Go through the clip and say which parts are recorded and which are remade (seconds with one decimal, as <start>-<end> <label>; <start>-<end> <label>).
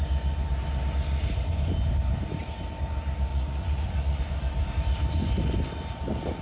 0.0-3.3 recorded; 3.3-4.2 remade; 4.2-6.4 recorded